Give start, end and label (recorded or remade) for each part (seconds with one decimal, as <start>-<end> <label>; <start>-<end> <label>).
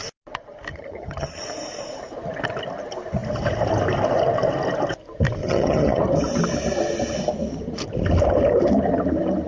0.0-0.7 recorded; 0.7-1.4 remade; 1.4-5.4 recorded; 5.4-6.0 remade; 6.0-9.5 recorded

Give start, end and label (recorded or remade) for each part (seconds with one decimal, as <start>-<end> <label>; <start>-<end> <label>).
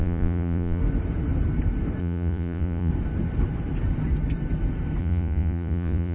0.0-0.8 remade; 0.8-2.0 recorded; 2.0-2.9 remade; 2.9-5.0 recorded; 5.0-6.1 remade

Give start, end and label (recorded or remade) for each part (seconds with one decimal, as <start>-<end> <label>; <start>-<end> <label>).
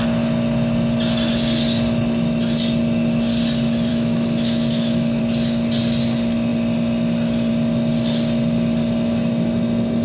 0.0-3.9 recorded; 3.9-5.2 remade; 5.2-10.0 recorded